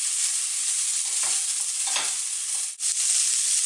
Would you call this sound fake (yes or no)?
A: no